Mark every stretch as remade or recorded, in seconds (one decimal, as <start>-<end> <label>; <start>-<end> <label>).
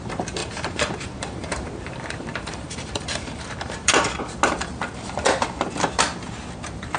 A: 0.0-0.4 recorded; 0.4-4.2 remade; 4.2-7.0 recorded